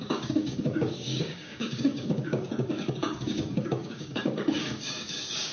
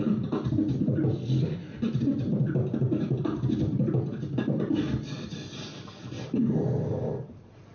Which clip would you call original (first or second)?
second